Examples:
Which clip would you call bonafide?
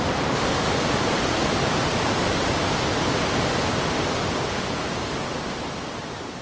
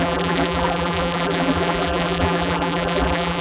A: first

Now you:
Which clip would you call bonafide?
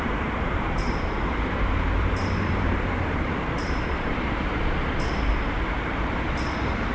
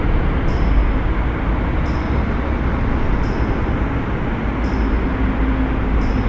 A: second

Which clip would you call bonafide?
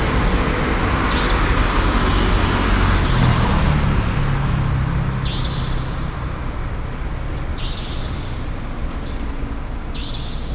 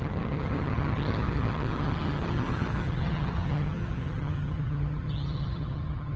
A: first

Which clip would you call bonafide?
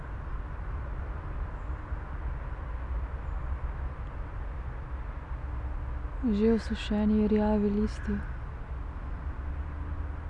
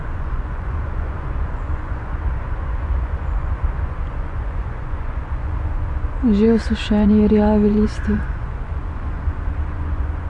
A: first